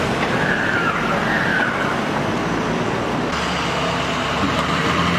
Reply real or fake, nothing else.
real